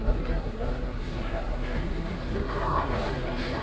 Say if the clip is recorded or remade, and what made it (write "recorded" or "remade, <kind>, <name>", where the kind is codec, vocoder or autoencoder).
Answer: remade, codec, SNAC